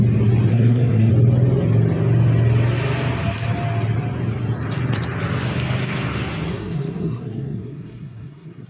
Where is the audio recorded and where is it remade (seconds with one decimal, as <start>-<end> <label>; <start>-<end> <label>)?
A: 0.0-0.5 recorded; 0.5-1.1 remade; 1.1-6.5 recorded; 6.5-8.7 remade